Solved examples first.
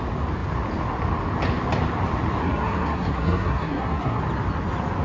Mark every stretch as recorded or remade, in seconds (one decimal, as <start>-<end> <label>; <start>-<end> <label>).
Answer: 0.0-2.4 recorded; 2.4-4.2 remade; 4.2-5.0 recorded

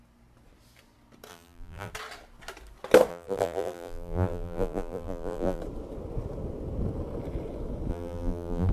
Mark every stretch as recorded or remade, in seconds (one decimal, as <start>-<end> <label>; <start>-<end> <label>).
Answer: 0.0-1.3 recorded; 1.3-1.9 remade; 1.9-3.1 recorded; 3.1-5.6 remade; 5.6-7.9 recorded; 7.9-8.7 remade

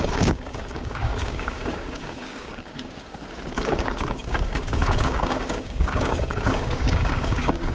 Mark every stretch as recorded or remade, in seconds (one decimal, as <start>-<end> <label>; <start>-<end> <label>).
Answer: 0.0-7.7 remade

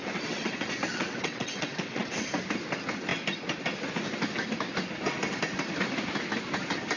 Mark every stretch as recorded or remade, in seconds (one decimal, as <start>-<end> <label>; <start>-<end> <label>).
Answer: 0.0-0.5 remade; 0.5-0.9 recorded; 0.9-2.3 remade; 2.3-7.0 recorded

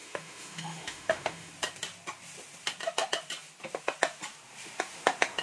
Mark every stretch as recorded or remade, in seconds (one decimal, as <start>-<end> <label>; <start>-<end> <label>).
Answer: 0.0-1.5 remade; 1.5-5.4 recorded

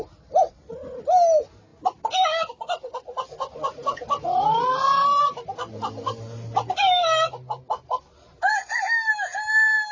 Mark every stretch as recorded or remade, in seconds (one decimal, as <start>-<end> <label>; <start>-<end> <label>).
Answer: 0.0-9.9 recorded

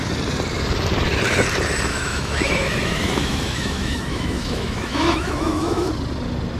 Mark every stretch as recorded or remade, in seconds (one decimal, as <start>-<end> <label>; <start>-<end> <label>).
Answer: 0.0-1.9 recorded; 1.9-5.9 remade; 5.9-6.6 recorded

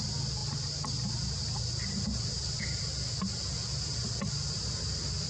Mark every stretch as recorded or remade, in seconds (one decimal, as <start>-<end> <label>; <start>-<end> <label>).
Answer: 0.0-5.3 recorded